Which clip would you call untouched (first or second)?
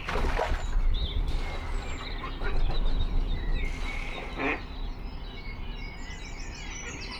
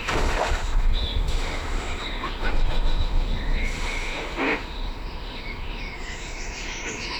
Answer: first